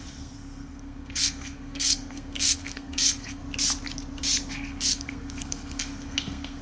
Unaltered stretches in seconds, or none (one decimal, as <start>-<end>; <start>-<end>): 3.4-4.5

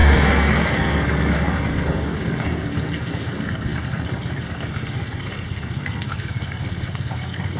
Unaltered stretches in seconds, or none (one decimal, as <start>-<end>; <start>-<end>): none